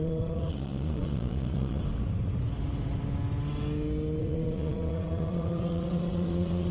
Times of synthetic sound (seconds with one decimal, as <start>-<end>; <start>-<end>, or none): 0.0-1.8; 4.2-6.7